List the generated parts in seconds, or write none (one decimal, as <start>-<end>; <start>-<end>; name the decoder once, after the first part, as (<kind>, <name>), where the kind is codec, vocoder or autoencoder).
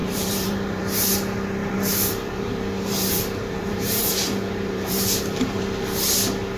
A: 0.0-0.8 (vocoder, BigVGAN v2); 1.6-5.6